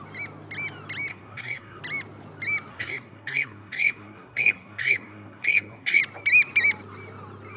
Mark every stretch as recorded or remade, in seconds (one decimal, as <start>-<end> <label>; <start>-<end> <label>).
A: 0.0-1.1 recorded; 1.1-1.8 remade; 1.8-2.7 recorded; 2.7-6.0 remade; 6.0-7.6 recorded